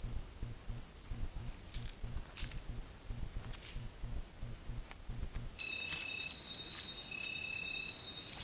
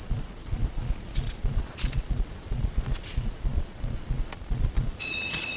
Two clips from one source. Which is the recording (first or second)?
first